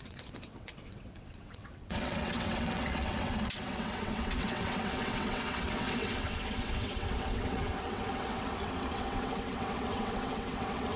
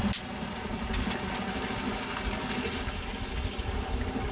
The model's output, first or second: first